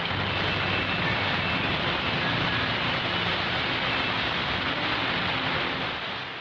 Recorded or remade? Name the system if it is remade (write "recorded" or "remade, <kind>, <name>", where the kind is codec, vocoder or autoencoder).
recorded